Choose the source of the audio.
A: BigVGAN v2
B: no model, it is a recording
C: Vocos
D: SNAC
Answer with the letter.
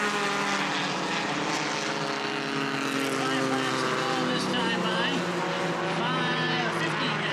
B